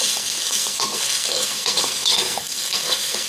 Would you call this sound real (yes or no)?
no